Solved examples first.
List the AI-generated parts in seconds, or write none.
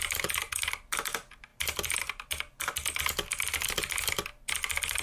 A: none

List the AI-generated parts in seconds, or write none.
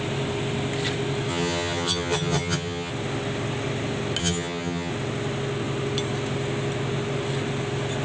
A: 1.3-2.9 (vocoder, HiFi-GAN); 4.2-4.9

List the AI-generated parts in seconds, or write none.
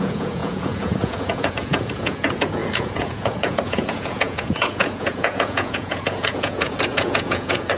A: 0.0-7.8 (vocoder, Vocos)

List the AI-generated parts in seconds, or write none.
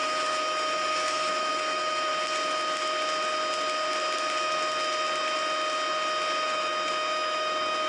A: 0.0-2.1 (autoencoder, DAC-VAE); 6.5-7.9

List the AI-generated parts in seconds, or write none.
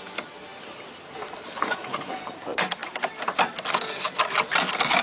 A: none